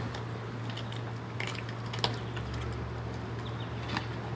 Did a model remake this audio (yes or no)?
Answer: no